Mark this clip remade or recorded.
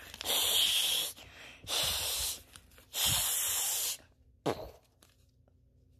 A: recorded